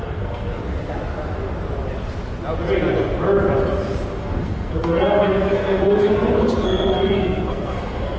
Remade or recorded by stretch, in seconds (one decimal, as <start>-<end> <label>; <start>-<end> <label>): 0.0-0.6 remade; 0.6-4.2 recorded; 4.2-8.2 remade